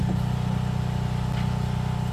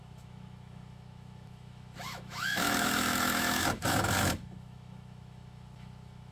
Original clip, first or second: first